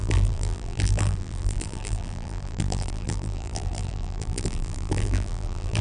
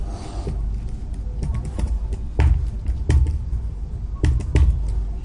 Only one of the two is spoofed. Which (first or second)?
first